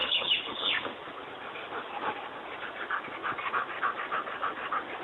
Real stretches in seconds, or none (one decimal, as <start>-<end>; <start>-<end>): 0.7-5.0